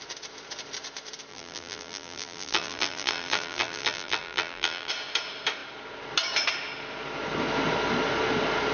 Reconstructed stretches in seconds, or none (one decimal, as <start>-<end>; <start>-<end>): 1.3-4.9